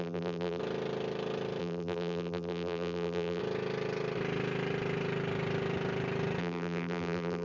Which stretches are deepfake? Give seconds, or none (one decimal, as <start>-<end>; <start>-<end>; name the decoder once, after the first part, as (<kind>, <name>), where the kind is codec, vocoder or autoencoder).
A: 0.0-0.6 (vocoder, BigVGAN v2); 1.6-3.4; 6.4-7.4